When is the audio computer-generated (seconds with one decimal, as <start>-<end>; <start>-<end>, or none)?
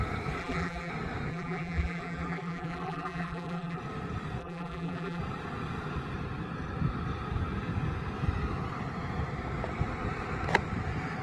0.4-0.9; 1.3-3.8; 4.4-5.2